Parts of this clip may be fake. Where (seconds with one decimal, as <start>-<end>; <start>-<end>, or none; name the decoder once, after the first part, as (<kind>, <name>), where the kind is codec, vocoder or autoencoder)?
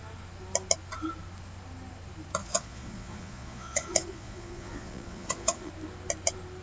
2.4-5.7 (vocoder, Vocos)